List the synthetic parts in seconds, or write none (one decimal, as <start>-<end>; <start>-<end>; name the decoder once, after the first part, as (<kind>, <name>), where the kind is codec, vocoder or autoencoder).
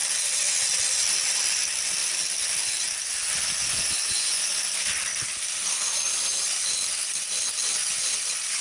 3.6-4.6 (vocoder, Vocos)